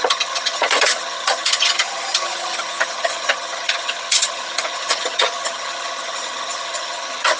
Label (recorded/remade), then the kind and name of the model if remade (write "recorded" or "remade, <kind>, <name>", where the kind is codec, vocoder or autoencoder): remade, vocoder, HiFi-GAN